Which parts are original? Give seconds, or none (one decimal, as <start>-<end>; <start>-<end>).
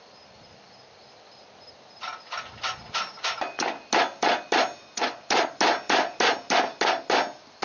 0.0-7.6